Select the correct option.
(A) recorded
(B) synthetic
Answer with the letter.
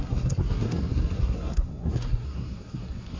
B